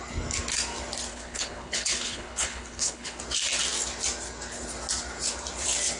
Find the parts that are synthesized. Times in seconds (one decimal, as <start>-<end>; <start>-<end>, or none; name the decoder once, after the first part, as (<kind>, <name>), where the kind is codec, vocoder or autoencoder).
1.1-3.2 (codec, HILCodec)